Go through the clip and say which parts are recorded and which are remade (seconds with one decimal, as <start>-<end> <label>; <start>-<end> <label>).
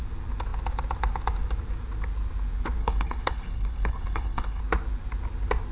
0.0-2.8 recorded; 2.8-4.6 remade; 4.6-5.7 recorded